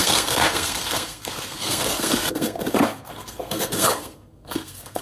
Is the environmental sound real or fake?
fake